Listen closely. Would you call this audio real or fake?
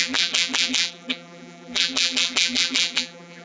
fake